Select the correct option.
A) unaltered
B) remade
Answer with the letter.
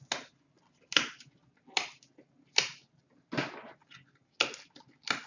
A